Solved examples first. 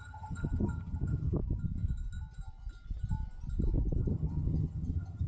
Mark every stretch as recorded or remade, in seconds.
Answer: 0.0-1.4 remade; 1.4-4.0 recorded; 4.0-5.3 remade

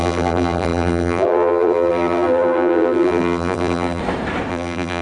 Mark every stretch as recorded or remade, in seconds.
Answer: 0.0-4.0 remade; 4.0-4.5 recorded; 4.5-5.0 remade